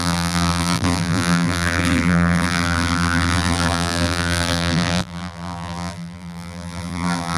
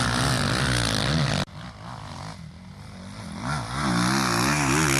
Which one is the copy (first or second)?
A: first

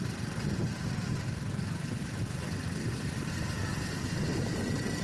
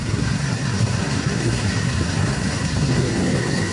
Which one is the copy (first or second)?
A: second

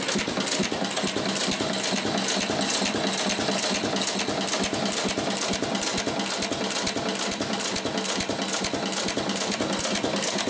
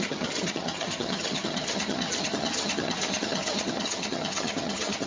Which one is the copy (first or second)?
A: second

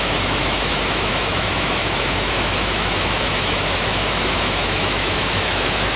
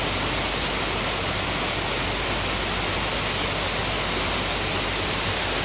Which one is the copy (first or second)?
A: first